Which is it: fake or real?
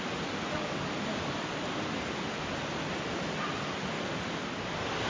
real